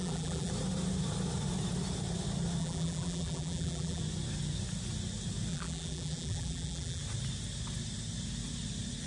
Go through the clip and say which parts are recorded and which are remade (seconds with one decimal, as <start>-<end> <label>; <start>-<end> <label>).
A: 0.0-0.5 remade; 0.5-2.6 recorded; 2.6-4.0 remade; 4.0-5.5 recorded; 5.5-7.0 remade; 7.0-9.1 recorded